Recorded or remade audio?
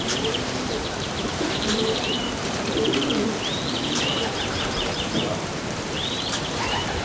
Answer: remade